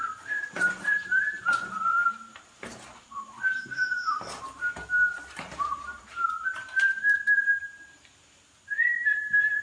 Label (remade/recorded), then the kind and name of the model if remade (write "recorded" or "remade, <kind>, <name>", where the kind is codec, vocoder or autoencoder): remade, vocoder, BigVGAN v2